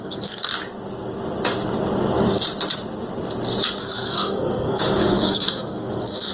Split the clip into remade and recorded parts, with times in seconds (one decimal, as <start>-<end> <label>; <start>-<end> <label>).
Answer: 0.0-0.5 remade; 0.5-3.8 recorded; 3.8-6.3 remade

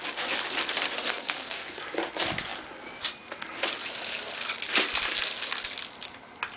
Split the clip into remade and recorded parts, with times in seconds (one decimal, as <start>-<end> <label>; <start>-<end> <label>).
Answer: 0.0-1.1 recorded; 1.1-1.8 remade; 1.8-6.6 recorded

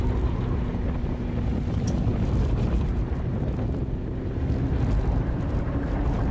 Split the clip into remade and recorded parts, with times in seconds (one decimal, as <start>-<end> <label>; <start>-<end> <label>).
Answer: 0.0-6.3 recorded

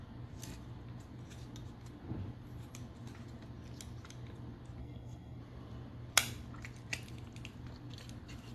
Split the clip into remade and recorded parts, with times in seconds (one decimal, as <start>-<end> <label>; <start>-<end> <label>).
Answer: 0.0-4.8 recorded; 4.8-5.4 remade; 5.4-8.5 recorded

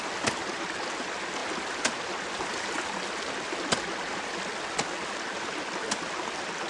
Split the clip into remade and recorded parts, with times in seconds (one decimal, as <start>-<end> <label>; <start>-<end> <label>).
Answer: 0.0-6.7 recorded